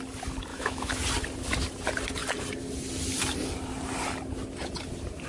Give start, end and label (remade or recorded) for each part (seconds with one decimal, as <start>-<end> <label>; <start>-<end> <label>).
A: 0.0-0.5 recorded; 0.5-1.0 remade; 1.0-5.3 recorded